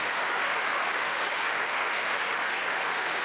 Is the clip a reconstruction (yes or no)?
yes